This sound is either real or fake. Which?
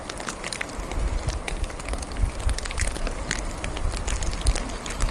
fake